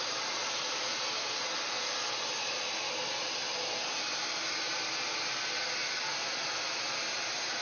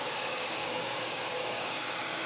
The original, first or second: first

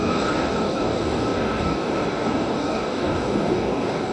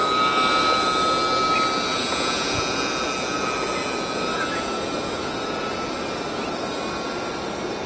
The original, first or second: second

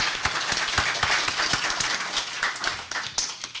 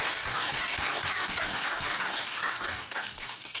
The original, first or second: first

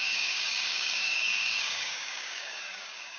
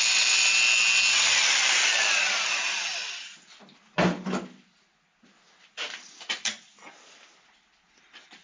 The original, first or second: second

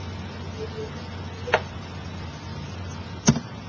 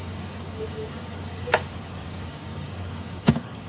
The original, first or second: first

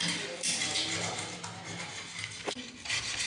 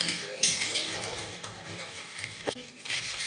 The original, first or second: first